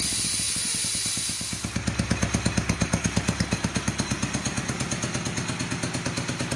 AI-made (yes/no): no